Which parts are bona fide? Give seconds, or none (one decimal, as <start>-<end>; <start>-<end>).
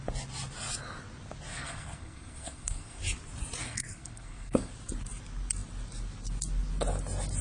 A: 0.0-1.5; 3.0-3.6; 4.7-7.4